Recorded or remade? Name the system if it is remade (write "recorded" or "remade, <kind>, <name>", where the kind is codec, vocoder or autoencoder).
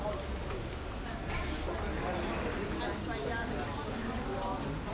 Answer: recorded